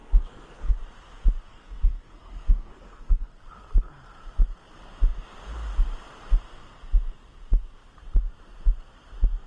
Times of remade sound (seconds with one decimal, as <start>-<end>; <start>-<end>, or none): 0.0-0.7; 1.5-3.3